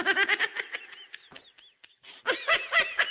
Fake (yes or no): no